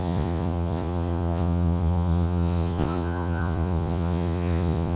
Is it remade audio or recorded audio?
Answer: remade